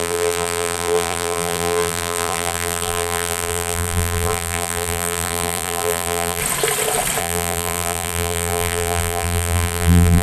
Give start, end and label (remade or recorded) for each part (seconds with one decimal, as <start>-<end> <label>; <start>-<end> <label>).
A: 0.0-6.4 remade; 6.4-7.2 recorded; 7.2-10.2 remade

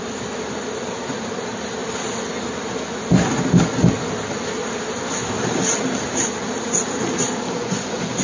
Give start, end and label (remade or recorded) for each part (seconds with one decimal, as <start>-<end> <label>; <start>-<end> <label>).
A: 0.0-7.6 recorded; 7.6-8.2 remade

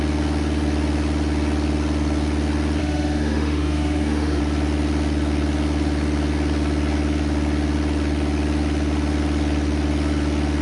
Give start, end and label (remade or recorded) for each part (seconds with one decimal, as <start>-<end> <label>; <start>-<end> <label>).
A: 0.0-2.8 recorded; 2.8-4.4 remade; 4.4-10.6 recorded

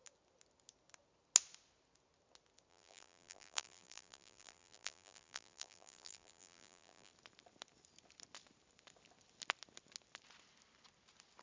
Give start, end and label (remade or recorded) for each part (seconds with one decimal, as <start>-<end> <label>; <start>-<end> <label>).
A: 0.0-2.7 recorded; 2.7-7.1 remade; 7.1-11.4 recorded

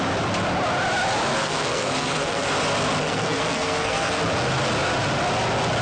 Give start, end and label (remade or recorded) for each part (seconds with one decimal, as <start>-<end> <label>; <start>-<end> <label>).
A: 0.0-1.4 recorded; 1.4-2.5 remade; 2.5-3.0 recorded; 3.0-4.2 remade; 4.2-5.8 recorded

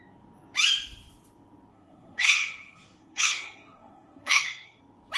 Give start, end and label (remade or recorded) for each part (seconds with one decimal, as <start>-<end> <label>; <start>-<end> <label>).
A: 0.0-1.7 recorded; 1.7-4.8 remade; 4.8-5.2 recorded

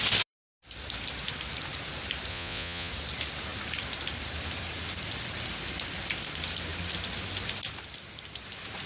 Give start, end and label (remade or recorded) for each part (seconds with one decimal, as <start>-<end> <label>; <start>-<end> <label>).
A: 0.0-2.3 recorded; 2.3-2.9 remade; 2.9-8.9 recorded

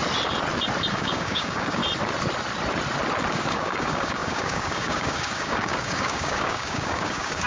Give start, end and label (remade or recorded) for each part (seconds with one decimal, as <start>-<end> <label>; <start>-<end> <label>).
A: 0.0-0.9 recorded; 0.9-1.8 remade; 1.8-3.3 recorded; 3.3-7.5 remade